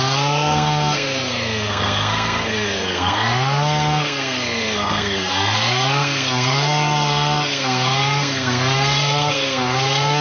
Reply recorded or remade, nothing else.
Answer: remade